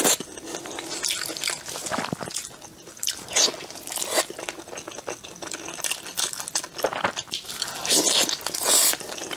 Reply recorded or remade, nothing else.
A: recorded